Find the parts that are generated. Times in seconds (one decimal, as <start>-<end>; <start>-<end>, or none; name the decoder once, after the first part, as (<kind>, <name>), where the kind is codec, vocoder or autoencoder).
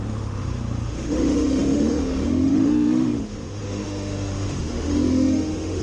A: 0.0-5.8 (autoencoder, DAC-VAE)